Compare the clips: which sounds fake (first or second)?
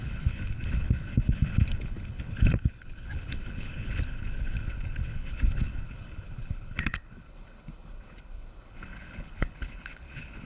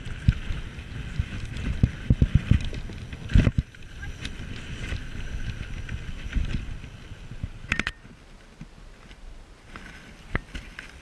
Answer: first